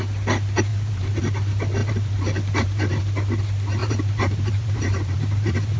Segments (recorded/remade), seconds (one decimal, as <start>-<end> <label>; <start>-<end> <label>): 0.0-0.7 recorded; 0.7-1.2 remade; 1.2-1.8 recorded; 1.8-3.0 remade; 3.0-3.8 recorded; 3.8-5.8 remade